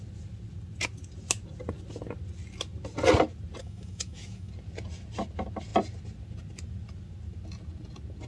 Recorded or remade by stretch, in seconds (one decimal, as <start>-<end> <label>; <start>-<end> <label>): 0.0-3.6 recorded; 3.6-4.5 remade; 4.5-8.3 recorded